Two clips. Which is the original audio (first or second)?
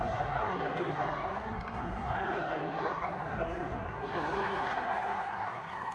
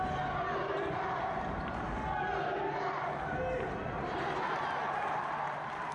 second